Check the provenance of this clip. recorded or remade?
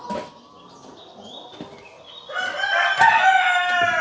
recorded